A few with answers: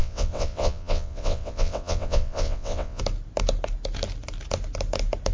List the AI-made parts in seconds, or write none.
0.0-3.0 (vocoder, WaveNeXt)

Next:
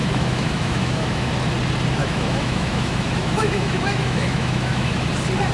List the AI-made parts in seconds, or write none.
0.0-1.3 (autoencoder, DAC-VAE); 2.0-5.1

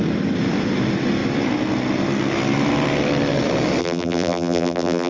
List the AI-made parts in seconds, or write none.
3.8-5.1 (vocoder, BigVGAN v2)

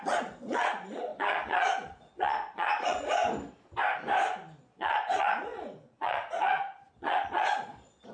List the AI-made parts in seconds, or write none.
0.0-3.2 (vocoder, Vocos); 4.6-8.1

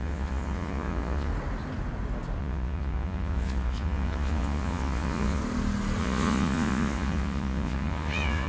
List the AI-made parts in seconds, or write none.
0.0-1.3 (vocoder, Vocos); 2.4-5.4; 6.0-8.5